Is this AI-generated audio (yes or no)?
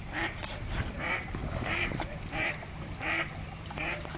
yes